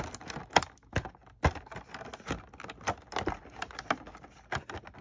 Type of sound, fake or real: real